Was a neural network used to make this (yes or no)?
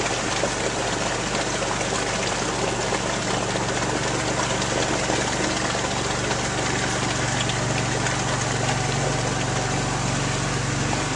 no